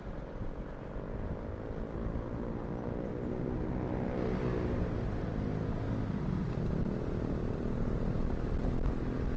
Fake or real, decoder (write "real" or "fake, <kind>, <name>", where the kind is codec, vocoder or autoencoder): real